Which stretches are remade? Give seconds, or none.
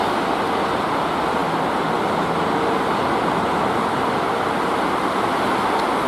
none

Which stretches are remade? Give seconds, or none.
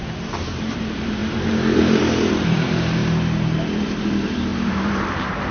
0.0-3.0 (vocoder, BigVGAN v2); 4.0-5.5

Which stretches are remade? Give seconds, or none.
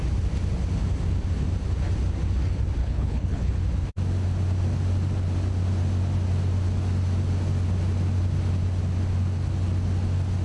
2.8-3.5 (codec, HILCodec)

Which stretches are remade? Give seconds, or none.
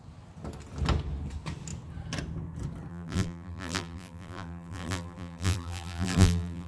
2.9-6.7 (vocoder, BigVGAN v2)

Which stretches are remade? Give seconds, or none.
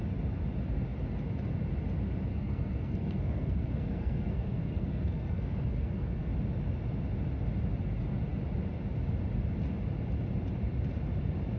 2.3-6.3 (codec, SNAC)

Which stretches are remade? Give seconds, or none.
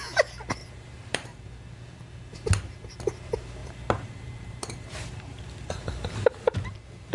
0.6-1.4 (vocoder, BigVGAN v2); 3.6-6.4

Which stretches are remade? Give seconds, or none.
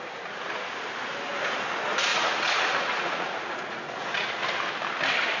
2.1-4.5 (vocoder, Vocos)